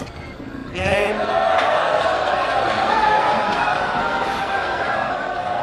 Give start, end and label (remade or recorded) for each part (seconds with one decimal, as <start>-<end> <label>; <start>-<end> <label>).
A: 0.0-5.6 remade